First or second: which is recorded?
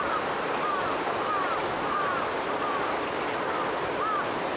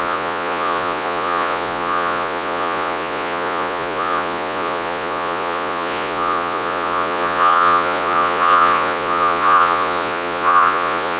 first